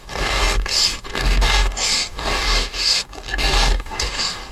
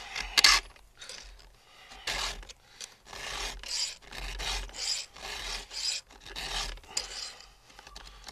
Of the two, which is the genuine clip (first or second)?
second